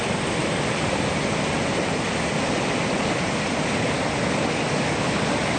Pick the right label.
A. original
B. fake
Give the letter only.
A